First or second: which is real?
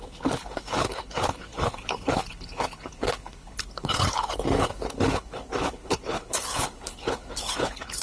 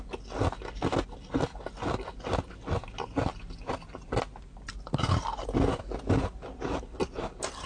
second